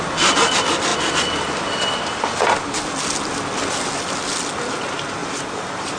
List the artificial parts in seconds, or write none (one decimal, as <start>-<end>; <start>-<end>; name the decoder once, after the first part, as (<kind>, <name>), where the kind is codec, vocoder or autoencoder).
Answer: none